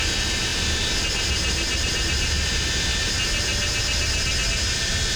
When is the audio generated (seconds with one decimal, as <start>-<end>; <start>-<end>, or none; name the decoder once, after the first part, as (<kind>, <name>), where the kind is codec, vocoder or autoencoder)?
none